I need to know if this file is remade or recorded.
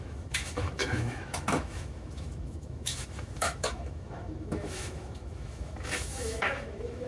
remade